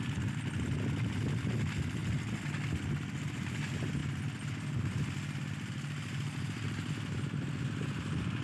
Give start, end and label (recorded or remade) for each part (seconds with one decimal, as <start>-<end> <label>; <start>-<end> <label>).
0.0-8.4 recorded